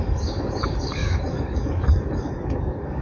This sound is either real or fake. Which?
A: fake